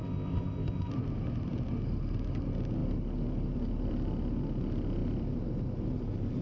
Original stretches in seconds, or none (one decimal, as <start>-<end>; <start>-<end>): 0.9-6.4